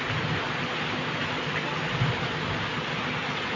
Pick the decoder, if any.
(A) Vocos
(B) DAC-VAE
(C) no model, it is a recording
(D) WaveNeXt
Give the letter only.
C